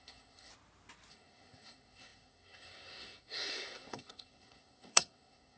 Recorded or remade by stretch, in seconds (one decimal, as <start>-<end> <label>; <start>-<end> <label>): 0.0-0.5 remade; 0.5-1.1 recorded; 1.1-5.6 remade